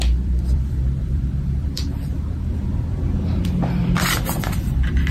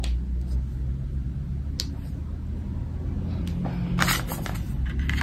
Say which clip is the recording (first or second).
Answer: second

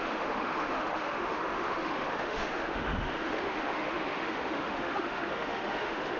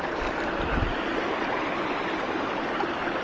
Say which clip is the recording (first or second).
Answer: second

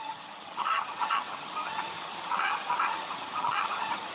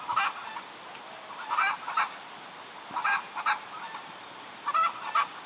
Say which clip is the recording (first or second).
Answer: second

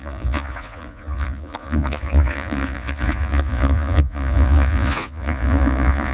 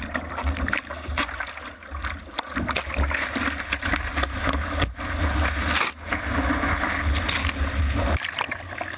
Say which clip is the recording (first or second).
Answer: second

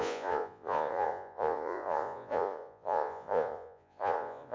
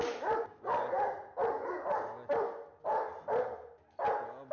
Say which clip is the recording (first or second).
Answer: second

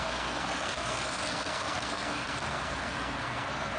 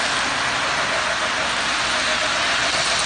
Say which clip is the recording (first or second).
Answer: second